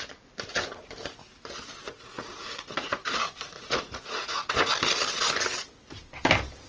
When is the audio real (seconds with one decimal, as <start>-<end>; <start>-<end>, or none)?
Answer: 0.0-1.8; 4.7-6.7